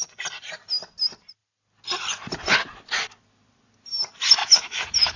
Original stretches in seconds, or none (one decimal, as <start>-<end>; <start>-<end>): 0.0-4.4